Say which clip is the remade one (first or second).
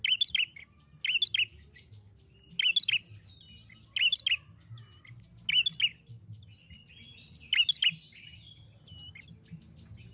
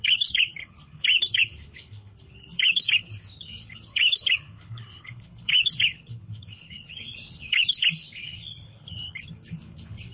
second